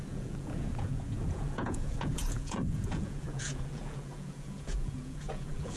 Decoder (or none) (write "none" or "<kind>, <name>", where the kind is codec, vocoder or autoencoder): vocoder, Vocos